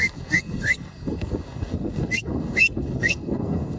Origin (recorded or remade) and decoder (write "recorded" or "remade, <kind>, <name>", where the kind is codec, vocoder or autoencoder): remade, codec, SNAC